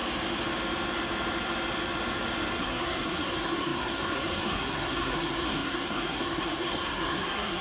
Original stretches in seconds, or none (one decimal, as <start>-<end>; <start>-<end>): 0.0-2.6